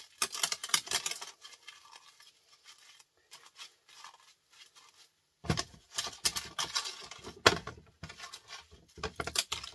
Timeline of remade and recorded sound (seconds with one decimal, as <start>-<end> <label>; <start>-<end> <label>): 0.0-9.7 recorded